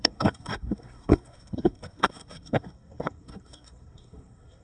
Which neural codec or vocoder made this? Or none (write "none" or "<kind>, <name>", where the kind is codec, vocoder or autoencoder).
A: codec, SNAC